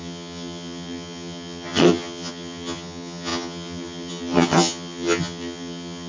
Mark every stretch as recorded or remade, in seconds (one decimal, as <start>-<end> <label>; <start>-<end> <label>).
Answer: 0.0-6.1 remade